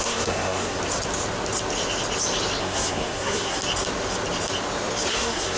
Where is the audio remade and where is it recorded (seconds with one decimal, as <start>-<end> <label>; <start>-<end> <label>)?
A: 0.0-0.8 remade; 0.8-2.6 recorded; 2.6-3.6 remade; 3.6-5.1 recorded; 5.1-5.6 remade

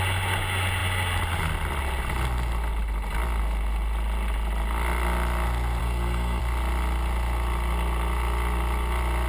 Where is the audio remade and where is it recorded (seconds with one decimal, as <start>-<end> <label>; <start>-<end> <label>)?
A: 0.0-5.8 recorded; 5.8-6.4 remade; 6.4-9.3 recorded

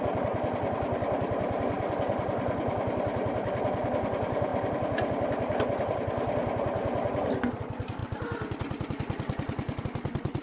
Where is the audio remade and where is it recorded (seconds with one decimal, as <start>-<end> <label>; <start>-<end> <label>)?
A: 0.0-10.4 recorded

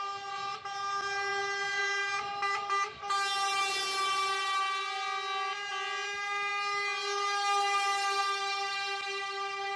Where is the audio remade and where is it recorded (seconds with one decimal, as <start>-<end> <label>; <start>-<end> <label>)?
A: 0.0-9.8 recorded

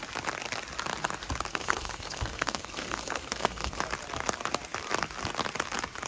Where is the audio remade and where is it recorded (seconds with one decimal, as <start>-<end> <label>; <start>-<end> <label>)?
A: 0.0-1.5 recorded; 1.5-3.8 remade; 3.8-6.1 recorded